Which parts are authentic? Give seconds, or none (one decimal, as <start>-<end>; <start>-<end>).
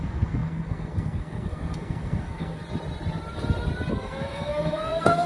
2.6-3.9